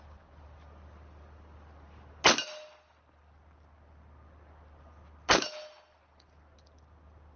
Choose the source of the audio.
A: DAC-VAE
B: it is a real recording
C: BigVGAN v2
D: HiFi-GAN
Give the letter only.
B